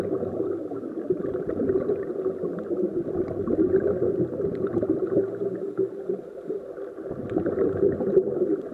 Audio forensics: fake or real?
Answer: real